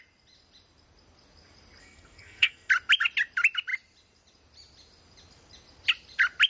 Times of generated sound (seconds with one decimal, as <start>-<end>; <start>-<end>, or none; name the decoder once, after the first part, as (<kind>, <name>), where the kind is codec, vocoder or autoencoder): 1.8-2.7 (codec, SNAC)